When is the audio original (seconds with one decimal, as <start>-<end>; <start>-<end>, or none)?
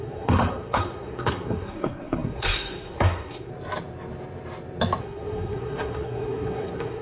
3.5-5.0